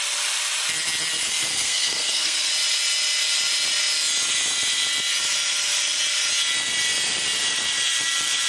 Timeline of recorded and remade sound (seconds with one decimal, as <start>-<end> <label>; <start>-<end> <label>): 0.0-1.5 recorded; 1.5-2.5 remade; 2.5-8.5 recorded